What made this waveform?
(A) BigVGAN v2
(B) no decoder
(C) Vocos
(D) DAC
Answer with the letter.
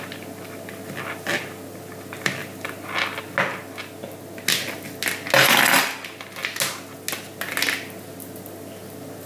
B